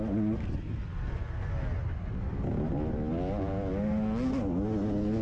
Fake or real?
real